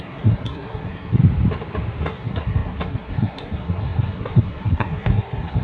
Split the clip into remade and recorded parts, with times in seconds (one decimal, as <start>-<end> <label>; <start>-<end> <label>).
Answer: 0.0-1.2 remade; 1.2-2.0 recorded; 2.0-5.6 remade